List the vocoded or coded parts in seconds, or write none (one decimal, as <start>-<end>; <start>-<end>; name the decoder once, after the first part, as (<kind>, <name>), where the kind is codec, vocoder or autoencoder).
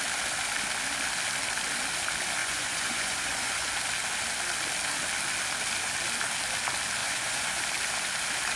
2.4-3.7 (vocoder, Vocos); 7.0-7.6